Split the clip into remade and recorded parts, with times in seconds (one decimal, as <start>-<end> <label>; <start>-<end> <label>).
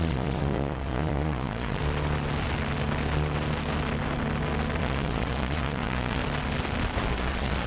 0.0-1.8 remade; 1.8-4.8 recorded; 4.8-6.2 remade; 6.2-7.0 recorded; 7.0-7.7 remade